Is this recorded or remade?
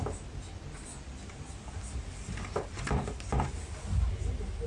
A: recorded